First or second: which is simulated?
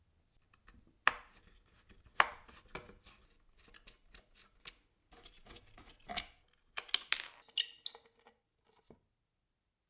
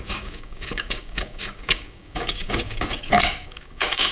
second